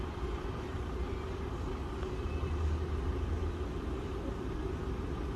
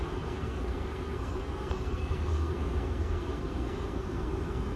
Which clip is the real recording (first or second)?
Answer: first